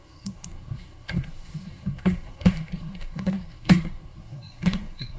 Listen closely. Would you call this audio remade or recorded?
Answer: remade